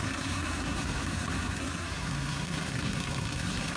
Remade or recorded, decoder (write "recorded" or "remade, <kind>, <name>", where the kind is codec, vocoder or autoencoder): remade, codec, SNAC